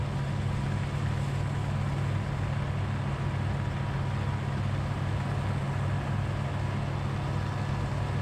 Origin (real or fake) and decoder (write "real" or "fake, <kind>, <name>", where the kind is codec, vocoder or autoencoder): real